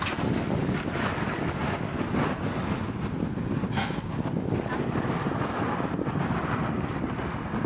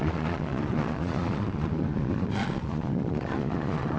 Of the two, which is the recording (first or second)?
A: first